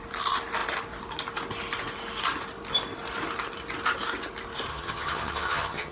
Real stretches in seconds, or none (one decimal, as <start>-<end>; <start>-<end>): 0.0-4.7